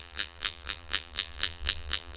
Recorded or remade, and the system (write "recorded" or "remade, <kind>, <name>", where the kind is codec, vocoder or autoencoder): remade, vocoder, BigVGAN v2